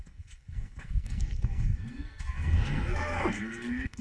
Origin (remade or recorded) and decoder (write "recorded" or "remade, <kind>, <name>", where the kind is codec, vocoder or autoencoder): remade, codec, SNAC